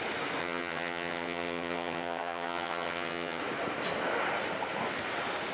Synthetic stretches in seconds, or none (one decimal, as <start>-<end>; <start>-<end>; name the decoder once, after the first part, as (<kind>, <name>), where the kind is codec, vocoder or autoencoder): 0.4-3.4 (vocoder, HiFi-GAN)